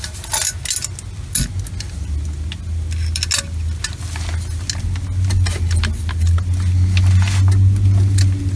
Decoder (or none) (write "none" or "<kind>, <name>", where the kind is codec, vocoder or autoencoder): none